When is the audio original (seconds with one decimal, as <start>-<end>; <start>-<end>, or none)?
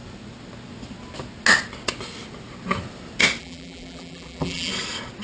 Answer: 0.0-3.4; 4.7-5.2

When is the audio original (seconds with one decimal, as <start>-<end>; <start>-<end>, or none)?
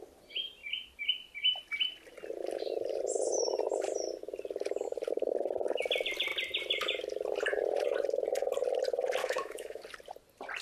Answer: 0.0-9.2; 9.8-10.6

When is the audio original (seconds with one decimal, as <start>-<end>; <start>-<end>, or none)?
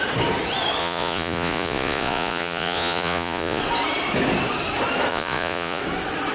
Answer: 0.0-0.8; 3.6-5.1; 5.8-6.3